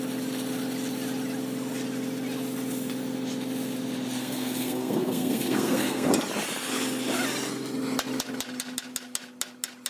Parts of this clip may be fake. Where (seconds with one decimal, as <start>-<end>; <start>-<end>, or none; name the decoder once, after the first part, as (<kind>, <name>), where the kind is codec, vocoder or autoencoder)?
4.2-6.1 (codec, SNAC)